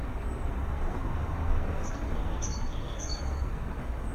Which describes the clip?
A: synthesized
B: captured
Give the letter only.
A